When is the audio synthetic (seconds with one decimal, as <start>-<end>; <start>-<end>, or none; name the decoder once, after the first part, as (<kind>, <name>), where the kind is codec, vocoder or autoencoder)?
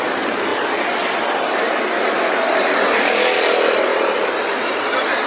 3.9-4.8 (vocoder, BigVGAN v2)